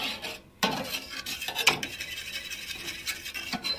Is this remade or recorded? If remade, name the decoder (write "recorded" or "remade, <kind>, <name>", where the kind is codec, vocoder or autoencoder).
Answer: recorded